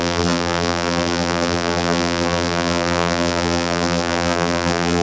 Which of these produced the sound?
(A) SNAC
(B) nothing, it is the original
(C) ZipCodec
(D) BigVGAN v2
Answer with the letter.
D